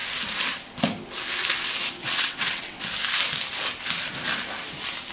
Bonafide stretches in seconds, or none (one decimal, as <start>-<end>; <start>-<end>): 0.0-2.0; 2.8-5.1